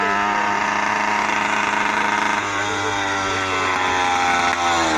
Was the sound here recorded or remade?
recorded